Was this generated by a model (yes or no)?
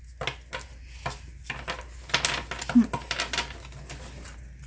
no